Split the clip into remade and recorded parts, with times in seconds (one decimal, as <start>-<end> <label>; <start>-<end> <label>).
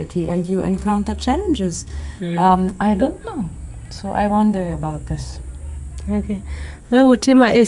0.0-3.1 remade; 3.1-4.3 recorded; 4.3-5.3 remade; 5.3-6.8 recorded; 6.8-7.7 remade